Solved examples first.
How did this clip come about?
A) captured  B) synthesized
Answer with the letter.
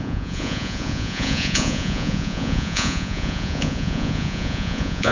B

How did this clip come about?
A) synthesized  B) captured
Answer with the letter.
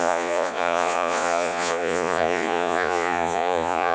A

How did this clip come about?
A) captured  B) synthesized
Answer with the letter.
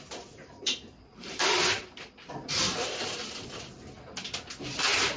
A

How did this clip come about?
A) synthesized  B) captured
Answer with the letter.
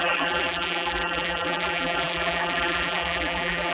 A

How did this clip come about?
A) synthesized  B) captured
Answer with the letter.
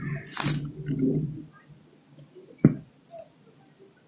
B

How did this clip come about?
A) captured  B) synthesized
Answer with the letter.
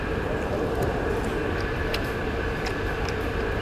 B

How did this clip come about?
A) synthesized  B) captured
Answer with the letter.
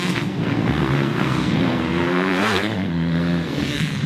A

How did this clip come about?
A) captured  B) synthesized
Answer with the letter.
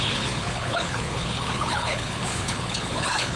B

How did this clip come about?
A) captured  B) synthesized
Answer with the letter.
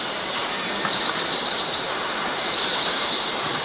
B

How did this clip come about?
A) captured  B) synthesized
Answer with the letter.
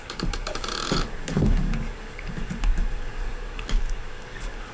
B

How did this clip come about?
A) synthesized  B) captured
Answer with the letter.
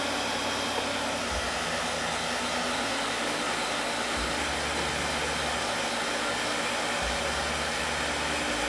B